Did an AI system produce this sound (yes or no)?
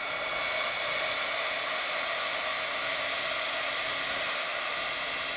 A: no